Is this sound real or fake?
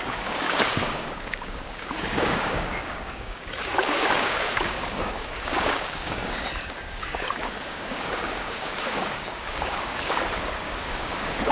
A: fake